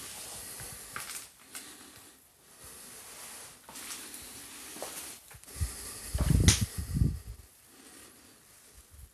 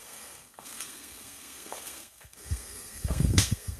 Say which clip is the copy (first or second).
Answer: second